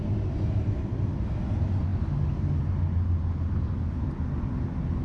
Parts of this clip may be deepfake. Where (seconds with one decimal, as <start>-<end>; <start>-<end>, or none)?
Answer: none